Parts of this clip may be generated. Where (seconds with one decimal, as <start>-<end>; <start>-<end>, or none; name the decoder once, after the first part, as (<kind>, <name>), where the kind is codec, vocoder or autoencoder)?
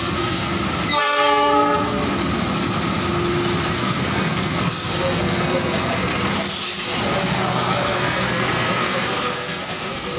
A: 0.0-0.5 (codec, SNAC); 1.0-2.0; 3.7-6.1; 7.2-10.2